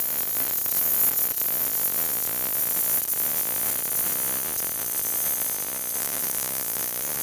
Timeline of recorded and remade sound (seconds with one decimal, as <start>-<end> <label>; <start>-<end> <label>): 0.0-6.0 recorded; 6.0-7.2 remade